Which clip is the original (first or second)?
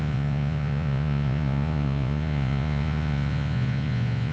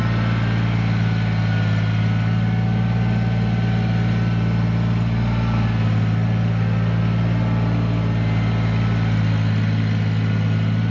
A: second